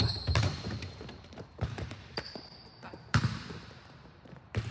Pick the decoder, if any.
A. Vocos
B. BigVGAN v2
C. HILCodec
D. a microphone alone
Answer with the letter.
B